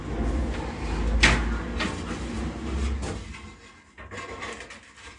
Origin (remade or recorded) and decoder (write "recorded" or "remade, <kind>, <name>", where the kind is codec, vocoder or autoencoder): recorded